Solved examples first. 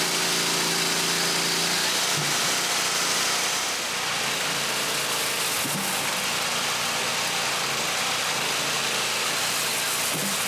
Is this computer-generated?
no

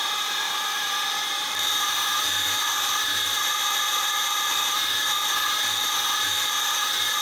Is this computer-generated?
yes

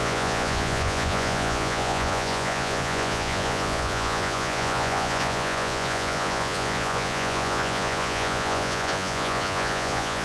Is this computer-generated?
yes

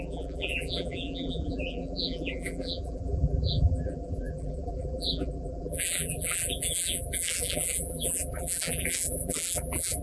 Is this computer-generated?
yes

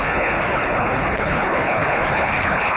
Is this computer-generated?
yes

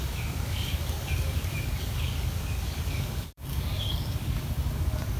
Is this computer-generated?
yes